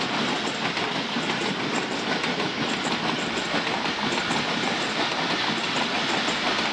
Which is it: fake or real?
real